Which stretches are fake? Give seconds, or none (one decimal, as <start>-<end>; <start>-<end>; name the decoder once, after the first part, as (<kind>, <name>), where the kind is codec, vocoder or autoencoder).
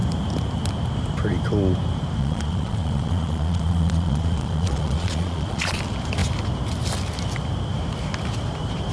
2.2-5.8 (vocoder, Vocos)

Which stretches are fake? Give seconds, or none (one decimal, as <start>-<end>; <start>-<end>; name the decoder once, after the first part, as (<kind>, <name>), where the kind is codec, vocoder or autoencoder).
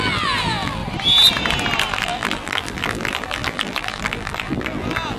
0.0-0.8 (vocoder, BigVGAN v2); 1.9-5.2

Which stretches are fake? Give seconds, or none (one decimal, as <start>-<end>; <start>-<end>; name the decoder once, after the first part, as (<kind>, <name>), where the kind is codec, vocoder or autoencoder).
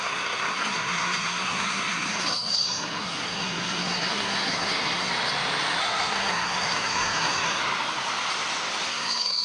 0.0-5.1 (codec, SNAC); 5.8-7.6; 8.9-9.4